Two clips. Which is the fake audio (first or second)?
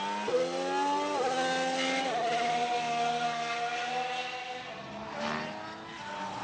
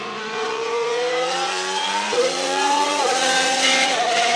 second